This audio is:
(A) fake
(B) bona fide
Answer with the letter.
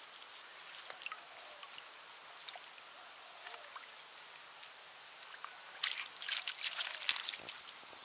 B